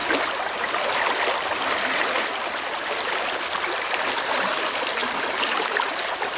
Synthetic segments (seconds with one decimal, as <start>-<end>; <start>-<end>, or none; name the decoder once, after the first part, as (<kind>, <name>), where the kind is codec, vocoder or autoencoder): 2.9-5.0 (vocoder, BigVGAN v2)